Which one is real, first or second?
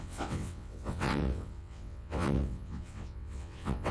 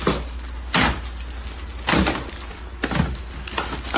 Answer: second